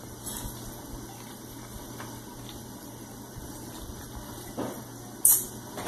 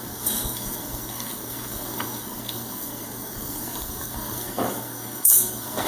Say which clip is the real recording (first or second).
first